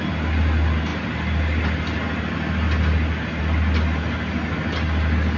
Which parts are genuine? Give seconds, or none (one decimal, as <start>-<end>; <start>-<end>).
0.0-5.4